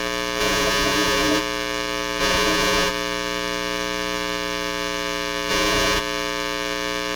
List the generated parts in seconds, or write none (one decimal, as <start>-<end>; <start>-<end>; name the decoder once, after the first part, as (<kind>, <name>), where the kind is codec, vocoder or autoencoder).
0.4-1.4 (vocoder, Vocos); 2.2-2.9; 5.5-6.0